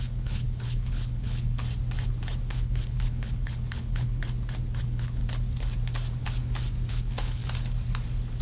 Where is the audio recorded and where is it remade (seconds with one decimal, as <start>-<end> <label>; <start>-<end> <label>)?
0.0-1.6 remade; 1.6-2.5 recorded; 2.5-4.2 remade; 4.2-4.8 recorded; 4.8-5.2 remade; 5.2-6.9 recorded; 6.9-7.4 remade; 7.4-8.4 recorded